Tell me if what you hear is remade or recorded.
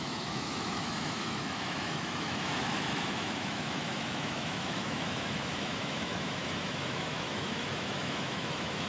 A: remade